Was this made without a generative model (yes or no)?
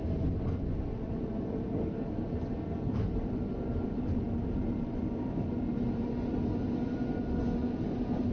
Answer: yes